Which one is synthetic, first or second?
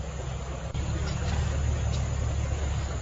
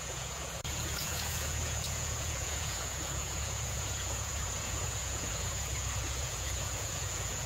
second